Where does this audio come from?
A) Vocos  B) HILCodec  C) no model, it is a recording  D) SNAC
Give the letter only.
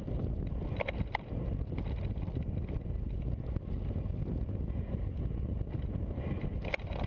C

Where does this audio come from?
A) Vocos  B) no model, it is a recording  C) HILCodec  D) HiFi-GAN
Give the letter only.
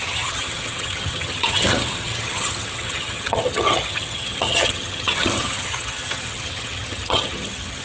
D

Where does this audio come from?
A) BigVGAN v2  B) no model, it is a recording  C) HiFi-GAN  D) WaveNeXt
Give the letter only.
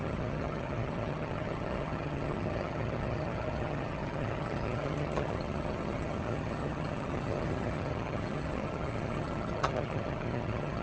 C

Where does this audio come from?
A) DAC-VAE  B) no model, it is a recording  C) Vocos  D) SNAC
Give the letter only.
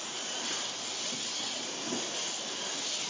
B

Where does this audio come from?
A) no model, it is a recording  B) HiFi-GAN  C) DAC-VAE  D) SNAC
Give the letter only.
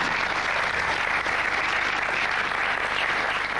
A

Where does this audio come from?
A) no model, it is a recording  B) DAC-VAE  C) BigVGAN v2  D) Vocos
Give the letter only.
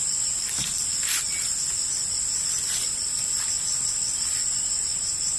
A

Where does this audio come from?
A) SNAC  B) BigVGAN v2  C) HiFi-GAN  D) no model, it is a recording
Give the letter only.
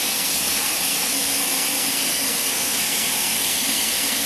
A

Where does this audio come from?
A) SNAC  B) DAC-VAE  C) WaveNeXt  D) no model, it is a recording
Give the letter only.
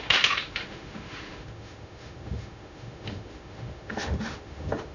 B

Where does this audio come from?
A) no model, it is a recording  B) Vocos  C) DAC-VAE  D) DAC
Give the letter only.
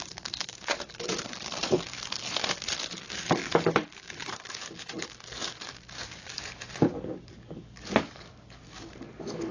D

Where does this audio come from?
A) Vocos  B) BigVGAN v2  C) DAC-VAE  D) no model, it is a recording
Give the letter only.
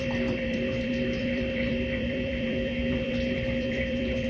B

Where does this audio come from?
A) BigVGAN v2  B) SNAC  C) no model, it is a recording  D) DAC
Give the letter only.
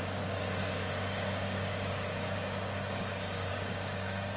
D